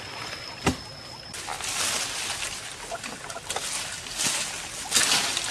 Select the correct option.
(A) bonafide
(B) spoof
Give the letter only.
A